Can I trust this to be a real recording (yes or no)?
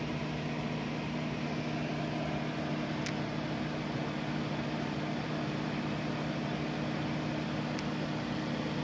yes